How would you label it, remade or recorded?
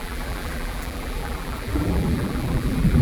remade